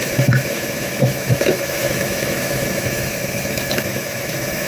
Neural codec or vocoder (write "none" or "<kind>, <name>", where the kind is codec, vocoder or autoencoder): autoencoder, DAC-VAE